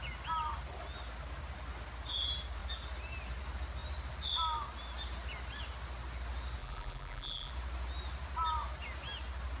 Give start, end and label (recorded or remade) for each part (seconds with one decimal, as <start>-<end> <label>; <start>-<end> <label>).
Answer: 0.0-6.6 recorded; 6.6-7.5 remade; 7.5-9.6 recorded